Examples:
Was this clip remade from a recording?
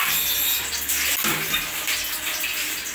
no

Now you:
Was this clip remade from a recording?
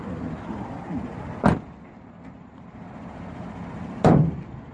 no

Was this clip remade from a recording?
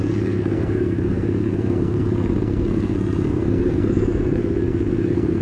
yes